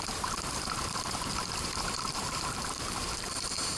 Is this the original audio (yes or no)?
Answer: no